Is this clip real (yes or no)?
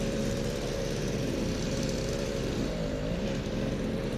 no